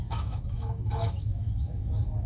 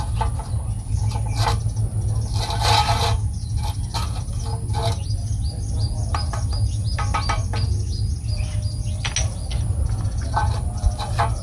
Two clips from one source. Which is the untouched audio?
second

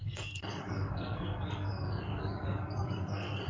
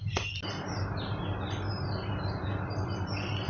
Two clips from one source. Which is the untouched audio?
second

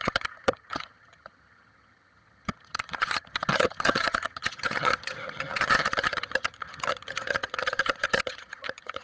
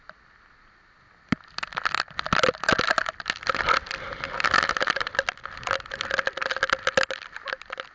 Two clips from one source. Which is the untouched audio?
second